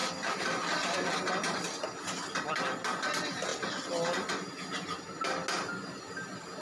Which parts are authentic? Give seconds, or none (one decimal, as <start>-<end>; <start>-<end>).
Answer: 0.0-6.6